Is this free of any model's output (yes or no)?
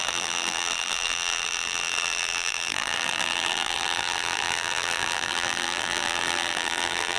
no